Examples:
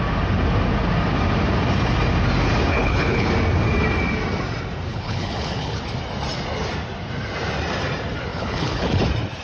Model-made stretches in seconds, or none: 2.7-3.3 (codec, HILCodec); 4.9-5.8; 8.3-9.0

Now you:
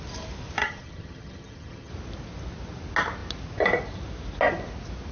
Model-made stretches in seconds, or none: 0.6-1.9 (vocoder, HiFi-GAN)

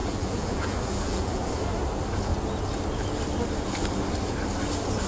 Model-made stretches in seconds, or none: 0.0-1.5 (vocoder, BigVGAN v2)

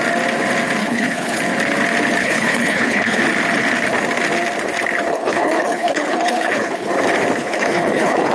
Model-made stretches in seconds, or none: 0.8-1.4 (codec, HILCodec); 2.2-3.2; 5.1-6.9; 7.4-8.3